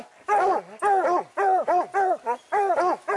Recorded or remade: recorded